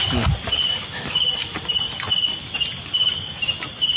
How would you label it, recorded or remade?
recorded